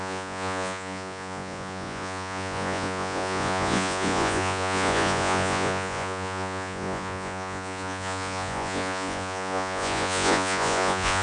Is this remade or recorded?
remade